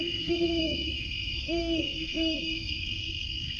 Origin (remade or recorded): remade